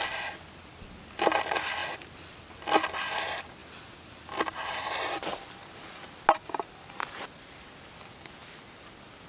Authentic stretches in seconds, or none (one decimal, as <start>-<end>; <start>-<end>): 0.0-9.3